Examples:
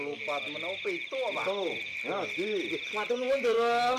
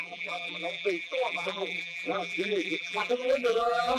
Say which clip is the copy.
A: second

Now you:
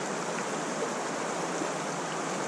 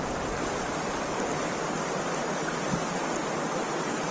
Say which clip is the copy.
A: first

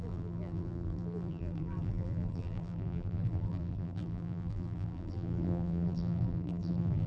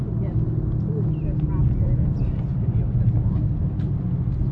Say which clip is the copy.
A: first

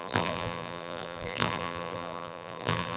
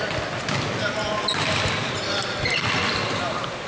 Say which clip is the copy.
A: first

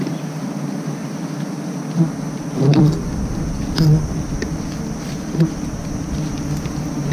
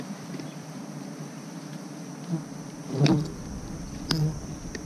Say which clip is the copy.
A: second